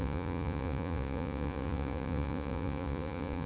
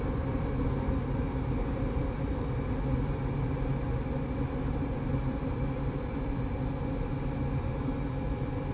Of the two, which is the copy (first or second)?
first